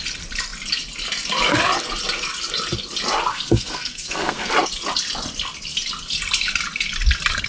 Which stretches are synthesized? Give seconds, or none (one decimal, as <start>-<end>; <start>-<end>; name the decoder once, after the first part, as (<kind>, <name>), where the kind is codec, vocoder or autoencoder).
3.3-4.5 (codec, SNAC)